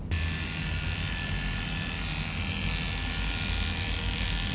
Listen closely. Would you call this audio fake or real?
real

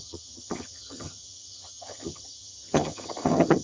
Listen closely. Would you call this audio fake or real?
fake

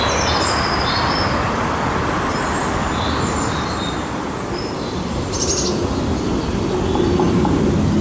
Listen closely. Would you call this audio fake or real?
real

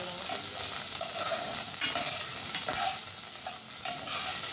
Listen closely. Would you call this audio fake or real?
real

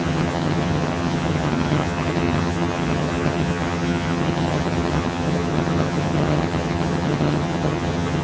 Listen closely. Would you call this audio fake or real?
fake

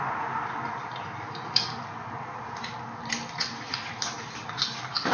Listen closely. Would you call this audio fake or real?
real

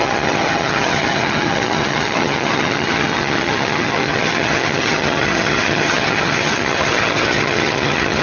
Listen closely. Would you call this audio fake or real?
fake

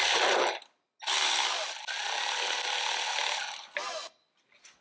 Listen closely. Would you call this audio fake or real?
real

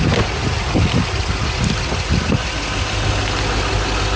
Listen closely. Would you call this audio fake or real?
real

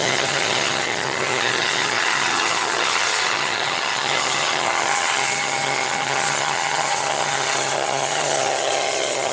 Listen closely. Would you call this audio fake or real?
fake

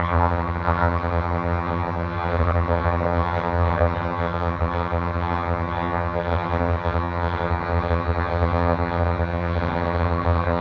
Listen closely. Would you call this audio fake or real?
fake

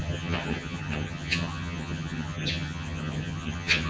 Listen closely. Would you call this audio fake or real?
fake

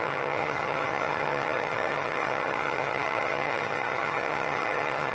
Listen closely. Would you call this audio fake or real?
fake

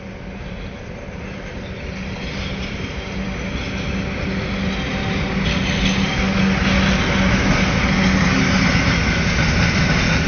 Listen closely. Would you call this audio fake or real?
real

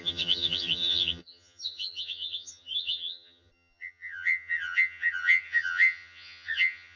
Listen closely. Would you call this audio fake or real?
fake